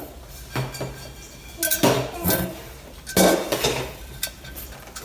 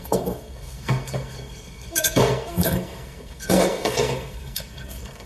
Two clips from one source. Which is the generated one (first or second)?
second